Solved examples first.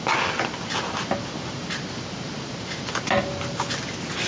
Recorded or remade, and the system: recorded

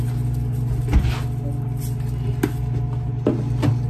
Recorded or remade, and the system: recorded